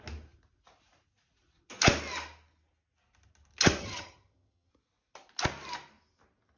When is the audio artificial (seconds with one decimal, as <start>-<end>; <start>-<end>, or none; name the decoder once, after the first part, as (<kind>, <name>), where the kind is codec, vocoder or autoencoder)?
3.8-4.7 (vocoder, HiFi-GAN)